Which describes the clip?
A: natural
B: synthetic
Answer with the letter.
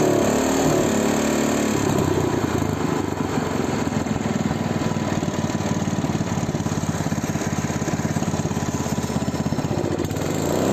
A